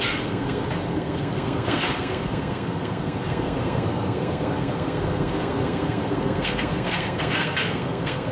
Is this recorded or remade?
remade